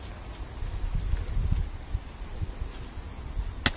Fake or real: real